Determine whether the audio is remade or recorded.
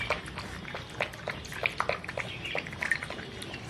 recorded